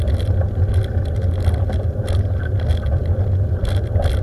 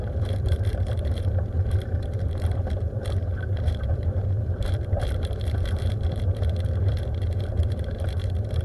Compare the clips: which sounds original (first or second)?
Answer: first